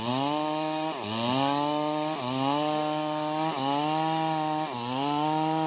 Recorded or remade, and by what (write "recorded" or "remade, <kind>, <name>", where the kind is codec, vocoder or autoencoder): recorded